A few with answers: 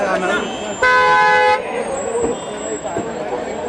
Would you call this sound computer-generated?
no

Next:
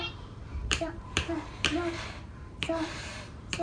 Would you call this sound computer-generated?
yes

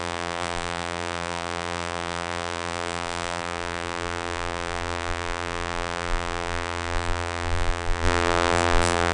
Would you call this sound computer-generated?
yes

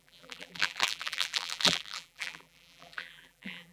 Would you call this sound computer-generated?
yes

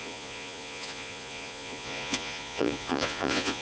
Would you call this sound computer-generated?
yes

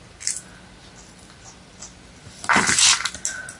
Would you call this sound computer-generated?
no